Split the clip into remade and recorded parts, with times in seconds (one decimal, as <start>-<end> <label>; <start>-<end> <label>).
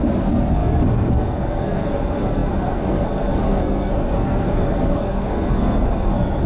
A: 0.0-6.5 remade